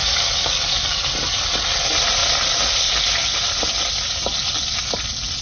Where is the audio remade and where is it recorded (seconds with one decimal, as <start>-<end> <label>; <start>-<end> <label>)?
0.0-1.1 remade; 1.1-5.4 recorded